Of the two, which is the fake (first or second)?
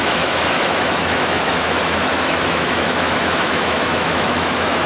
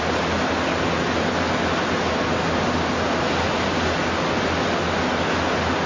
first